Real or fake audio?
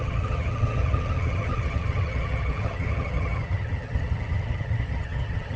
fake